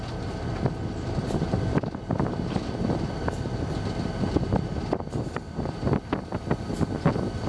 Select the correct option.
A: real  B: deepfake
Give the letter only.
A